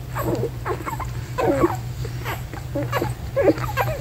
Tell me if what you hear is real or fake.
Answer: real